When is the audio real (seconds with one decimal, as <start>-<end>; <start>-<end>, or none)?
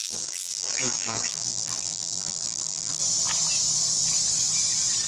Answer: 3.0-5.1